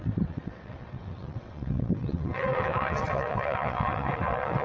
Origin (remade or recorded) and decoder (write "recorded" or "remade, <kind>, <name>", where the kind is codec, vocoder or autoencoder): remade, vocoder, WaveNeXt